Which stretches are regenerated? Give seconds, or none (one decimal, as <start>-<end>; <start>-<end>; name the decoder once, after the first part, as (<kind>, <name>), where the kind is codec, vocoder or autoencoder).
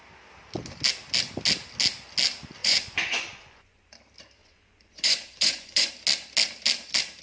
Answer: 2.6-3.9 (vocoder, Vocos); 4.4-5.9